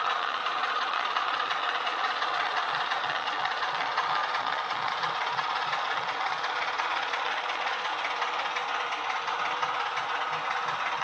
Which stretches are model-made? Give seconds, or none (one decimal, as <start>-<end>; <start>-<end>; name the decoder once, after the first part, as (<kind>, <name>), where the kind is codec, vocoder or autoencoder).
0.0-7.9 (vocoder, Vocos)